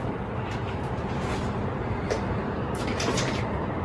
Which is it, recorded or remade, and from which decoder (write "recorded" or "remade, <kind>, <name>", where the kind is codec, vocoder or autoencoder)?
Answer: remade, vocoder, BigVGAN v2